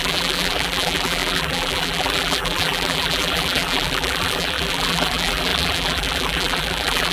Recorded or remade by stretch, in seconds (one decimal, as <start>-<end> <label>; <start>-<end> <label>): 0.0-7.1 remade